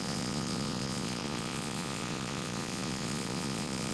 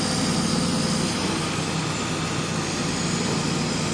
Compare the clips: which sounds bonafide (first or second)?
second